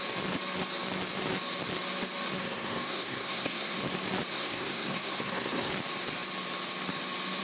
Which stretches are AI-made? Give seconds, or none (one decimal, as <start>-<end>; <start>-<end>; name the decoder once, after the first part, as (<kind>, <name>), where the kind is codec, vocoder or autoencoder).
2.4-3.8 (codec, SNAC); 4.3-5.7